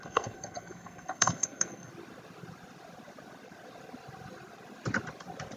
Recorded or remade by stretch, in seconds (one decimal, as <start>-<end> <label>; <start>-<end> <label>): 0.0-1.9 remade; 1.9-5.6 recorded